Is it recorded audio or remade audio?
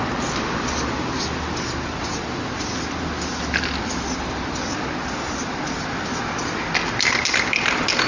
recorded